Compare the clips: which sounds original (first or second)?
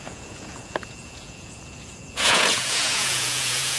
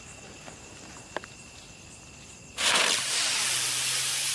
second